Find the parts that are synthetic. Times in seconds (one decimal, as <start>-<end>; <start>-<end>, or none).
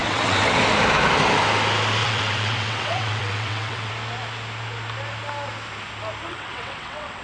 0.0-0.6; 2.0-3.9; 6.3-7.2